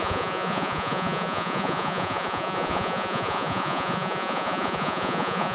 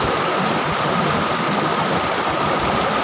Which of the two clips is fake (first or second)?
first